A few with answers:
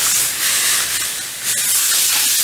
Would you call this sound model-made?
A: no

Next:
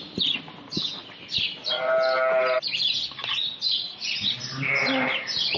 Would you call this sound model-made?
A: no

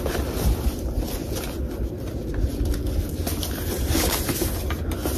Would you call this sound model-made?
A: no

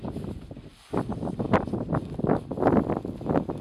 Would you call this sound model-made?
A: no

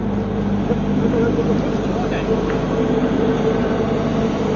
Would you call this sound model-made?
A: no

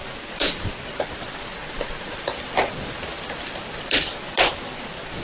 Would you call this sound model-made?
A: no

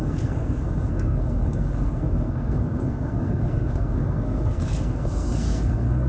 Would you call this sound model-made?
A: yes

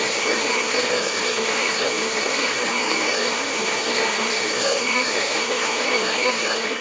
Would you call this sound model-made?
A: yes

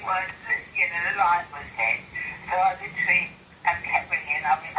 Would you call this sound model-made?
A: no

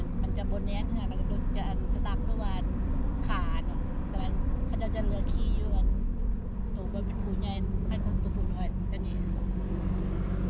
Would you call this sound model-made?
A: no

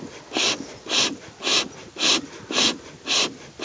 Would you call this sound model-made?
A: no